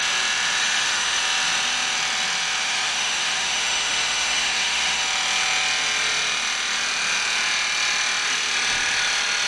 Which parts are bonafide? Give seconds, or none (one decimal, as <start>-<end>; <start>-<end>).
0.0-0.6; 1.2-2.6; 5.0-9.5